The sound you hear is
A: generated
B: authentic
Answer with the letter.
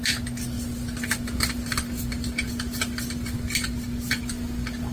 B